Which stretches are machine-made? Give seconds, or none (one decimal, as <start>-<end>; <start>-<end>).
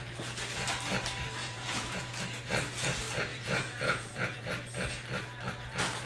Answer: 1.4-2.1; 3.3-4.4